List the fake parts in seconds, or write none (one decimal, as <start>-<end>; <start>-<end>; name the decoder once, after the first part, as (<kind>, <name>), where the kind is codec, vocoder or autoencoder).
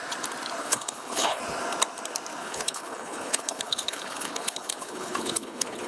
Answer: 0.6-1.4 (codec, HILCodec); 2.4-5.9